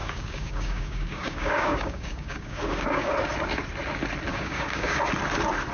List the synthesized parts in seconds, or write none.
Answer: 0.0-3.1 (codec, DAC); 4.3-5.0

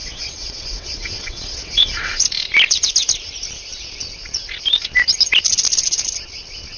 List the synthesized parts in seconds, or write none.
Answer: 0.0-2.2 (vocoder, WaveNeXt)

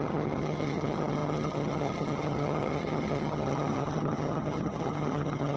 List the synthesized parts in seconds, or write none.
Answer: 0.0-5.6 (vocoder, HiFi-GAN)

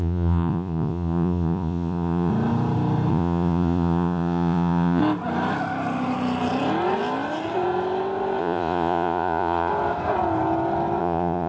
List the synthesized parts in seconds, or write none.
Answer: 0.0-2.3 (vocoder, Vocos); 3.1-5.0; 8.4-9.7; 11.0-11.5